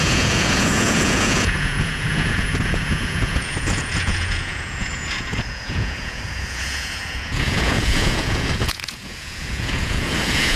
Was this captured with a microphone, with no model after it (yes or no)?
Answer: no